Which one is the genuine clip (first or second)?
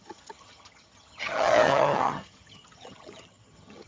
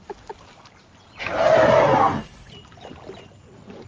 second